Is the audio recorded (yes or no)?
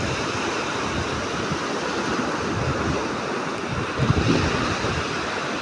yes